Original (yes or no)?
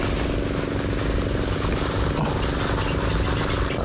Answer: yes